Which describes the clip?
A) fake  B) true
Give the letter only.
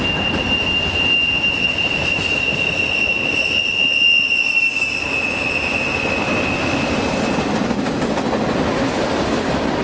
B